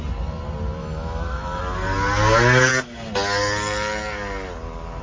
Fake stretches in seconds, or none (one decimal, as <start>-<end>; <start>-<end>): 0.8-1.6